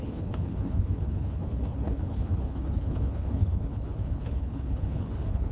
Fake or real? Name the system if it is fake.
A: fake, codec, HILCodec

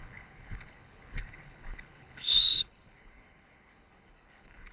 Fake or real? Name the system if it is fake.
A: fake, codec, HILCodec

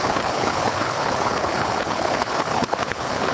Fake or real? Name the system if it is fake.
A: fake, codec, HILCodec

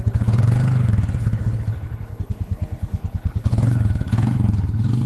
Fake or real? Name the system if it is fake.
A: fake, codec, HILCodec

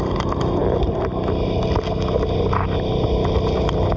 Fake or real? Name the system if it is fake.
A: real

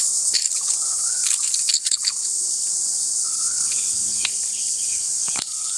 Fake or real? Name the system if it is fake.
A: fake, codec, HILCodec